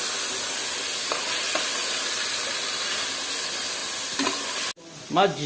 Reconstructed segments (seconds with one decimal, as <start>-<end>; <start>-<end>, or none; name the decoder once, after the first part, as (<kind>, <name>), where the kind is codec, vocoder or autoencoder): none